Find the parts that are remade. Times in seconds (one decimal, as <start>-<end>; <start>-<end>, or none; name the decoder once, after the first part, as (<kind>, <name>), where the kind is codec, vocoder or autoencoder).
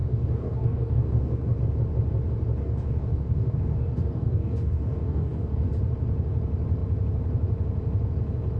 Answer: 0.0-1.6 (codec, DAC); 2.6-5.7